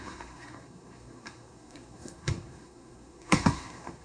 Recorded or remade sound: remade